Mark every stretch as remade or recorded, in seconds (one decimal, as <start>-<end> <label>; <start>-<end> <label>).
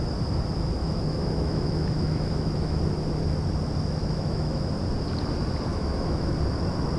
0.0-0.8 recorded; 0.8-2.8 remade; 2.8-4.0 recorded; 4.0-4.7 remade; 4.7-5.7 recorded; 5.7-6.3 remade; 6.3-7.0 recorded